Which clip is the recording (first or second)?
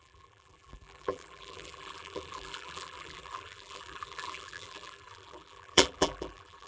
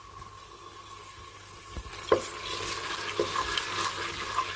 second